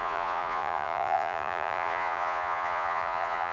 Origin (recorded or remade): remade